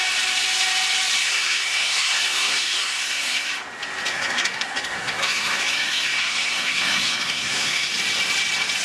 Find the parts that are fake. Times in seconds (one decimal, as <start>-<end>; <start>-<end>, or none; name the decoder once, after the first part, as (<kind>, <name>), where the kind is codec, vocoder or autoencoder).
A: 1.2-3.5 (codec, SNAC); 4.1-7.9